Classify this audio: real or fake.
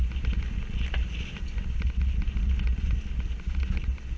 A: real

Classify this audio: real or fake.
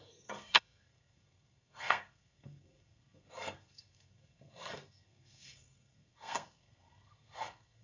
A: fake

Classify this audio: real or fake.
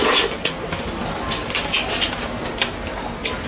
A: real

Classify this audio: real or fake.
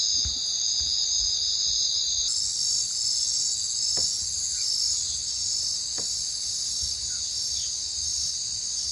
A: real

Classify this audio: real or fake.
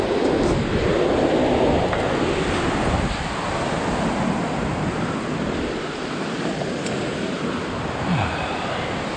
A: real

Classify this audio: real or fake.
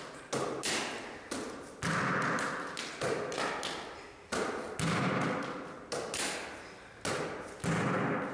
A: real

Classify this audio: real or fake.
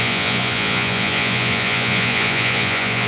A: fake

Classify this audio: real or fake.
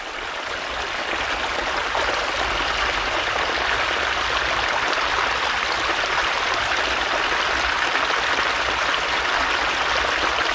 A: real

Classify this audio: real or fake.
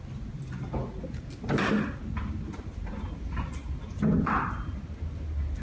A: real